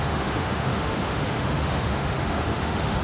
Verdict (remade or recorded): remade